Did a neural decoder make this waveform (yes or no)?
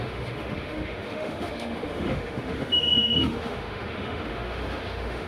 yes